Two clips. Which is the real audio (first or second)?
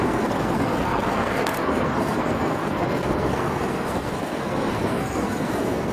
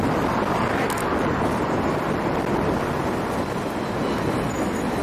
second